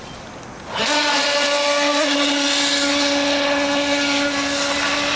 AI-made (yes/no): no